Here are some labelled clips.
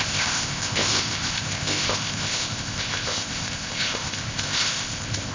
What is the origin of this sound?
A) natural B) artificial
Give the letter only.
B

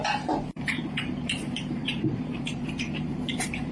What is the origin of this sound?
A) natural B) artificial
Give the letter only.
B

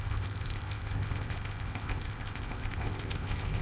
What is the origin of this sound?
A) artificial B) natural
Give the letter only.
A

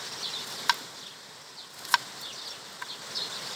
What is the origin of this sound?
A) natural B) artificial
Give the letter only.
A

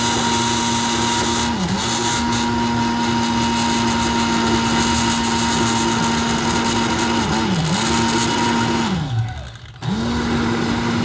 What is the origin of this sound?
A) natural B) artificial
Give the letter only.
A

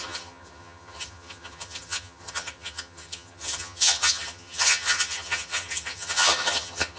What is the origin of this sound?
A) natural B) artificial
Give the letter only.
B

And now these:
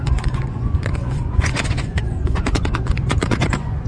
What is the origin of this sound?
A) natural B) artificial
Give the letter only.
B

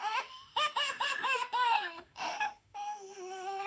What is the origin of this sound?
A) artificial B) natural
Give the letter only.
A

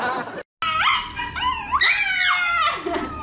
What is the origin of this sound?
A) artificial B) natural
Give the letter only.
B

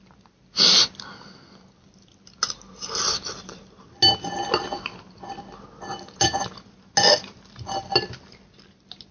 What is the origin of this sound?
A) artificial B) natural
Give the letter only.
B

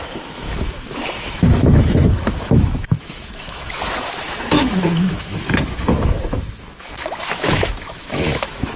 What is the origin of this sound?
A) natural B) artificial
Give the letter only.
B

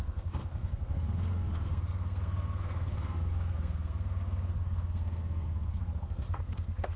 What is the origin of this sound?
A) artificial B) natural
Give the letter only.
A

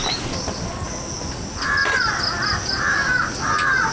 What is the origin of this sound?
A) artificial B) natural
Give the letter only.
B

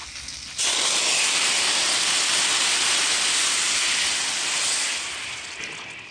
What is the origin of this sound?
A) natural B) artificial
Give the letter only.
A